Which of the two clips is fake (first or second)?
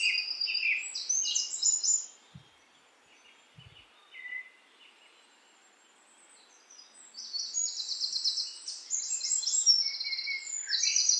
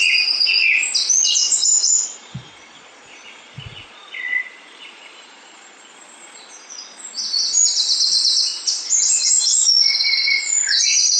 second